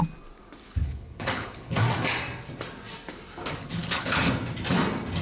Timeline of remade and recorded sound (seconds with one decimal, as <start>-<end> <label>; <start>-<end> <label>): 0.0-0.8 recorded; 0.8-1.8 remade; 1.8-3.6 recorded; 3.6-4.3 remade; 4.3-5.2 recorded